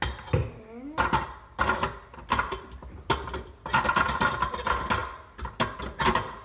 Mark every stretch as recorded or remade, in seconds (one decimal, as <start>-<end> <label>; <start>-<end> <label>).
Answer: 0.0-6.4 recorded